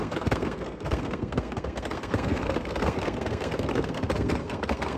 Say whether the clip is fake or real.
fake